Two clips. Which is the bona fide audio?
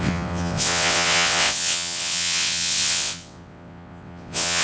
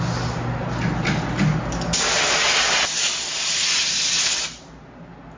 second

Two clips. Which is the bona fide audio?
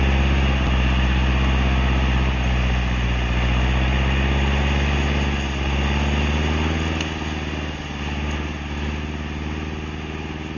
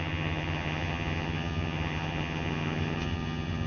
first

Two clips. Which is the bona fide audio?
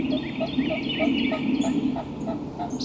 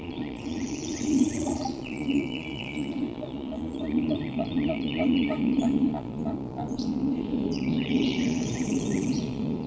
first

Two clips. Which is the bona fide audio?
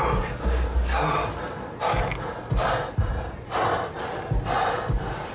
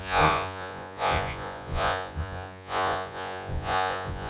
first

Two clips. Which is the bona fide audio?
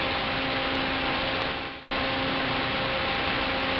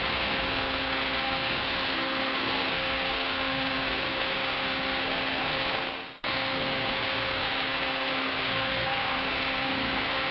first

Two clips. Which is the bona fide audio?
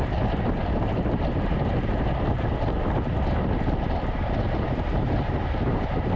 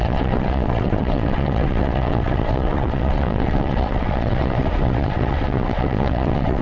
first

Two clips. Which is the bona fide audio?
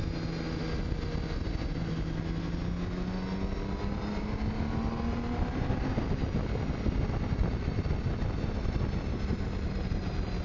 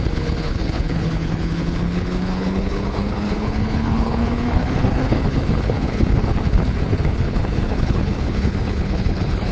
first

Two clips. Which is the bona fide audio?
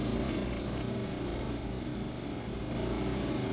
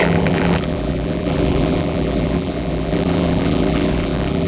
first